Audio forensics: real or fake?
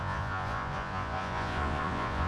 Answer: fake